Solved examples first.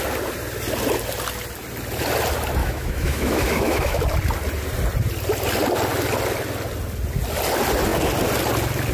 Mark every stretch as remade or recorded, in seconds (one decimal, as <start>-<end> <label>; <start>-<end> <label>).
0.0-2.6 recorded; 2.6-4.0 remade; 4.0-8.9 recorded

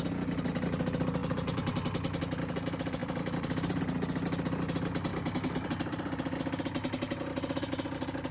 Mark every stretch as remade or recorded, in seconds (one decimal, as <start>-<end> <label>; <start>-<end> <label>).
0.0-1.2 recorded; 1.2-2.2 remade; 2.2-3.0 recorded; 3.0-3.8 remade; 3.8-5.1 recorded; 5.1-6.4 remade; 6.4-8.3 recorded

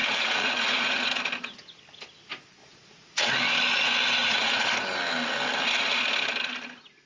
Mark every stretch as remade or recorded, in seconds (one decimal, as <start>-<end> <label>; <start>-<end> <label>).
0.0-1.2 remade; 1.2-2.6 recorded; 2.6-3.3 remade; 3.3-4.2 recorded; 4.2-4.7 remade; 4.7-7.1 recorded

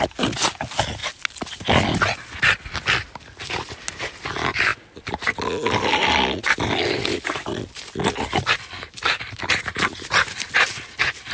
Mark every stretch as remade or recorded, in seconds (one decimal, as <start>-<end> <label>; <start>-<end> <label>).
0.0-11.3 recorded

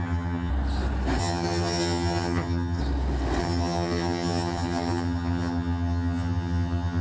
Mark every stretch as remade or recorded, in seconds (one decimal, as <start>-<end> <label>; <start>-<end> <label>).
0.0-0.5 remade; 0.5-1.2 recorded; 1.2-2.8 remade; 2.8-3.4 recorded; 3.4-7.0 remade

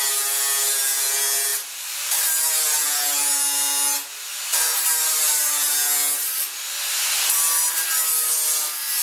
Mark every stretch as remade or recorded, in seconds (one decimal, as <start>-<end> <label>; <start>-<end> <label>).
0.0-1.5 recorded; 1.5-2.5 remade; 2.5-4.5 recorded; 4.5-5.7 remade; 5.7-9.0 recorded